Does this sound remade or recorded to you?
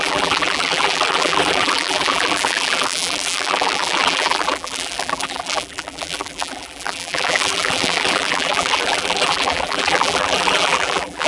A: remade